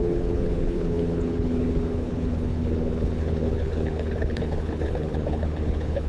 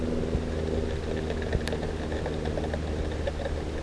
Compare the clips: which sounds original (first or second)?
second